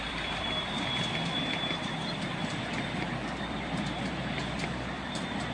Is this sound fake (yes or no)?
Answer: yes